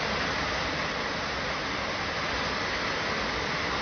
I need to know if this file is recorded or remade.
recorded